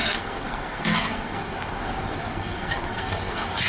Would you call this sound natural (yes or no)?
no